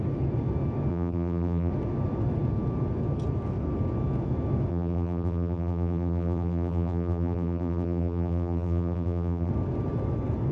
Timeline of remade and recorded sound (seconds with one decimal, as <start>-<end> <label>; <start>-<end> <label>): 0.0-0.9 recorded; 0.9-1.7 remade; 1.7-4.7 recorded; 4.7-9.5 remade; 9.5-10.5 recorded